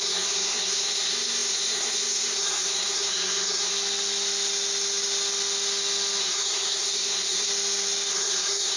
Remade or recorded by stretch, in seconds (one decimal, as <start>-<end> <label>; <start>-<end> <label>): 0.0-3.7 remade; 3.7-6.2 recorded; 6.2-7.5 remade; 7.5-8.1 recorded; 8.1-8.8 remade